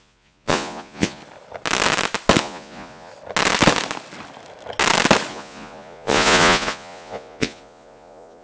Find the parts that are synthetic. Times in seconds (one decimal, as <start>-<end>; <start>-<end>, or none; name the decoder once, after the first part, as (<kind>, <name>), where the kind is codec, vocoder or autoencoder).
0.0-1.2 (vocoder, Vocos); 2.4-3.1; 5.3-8.4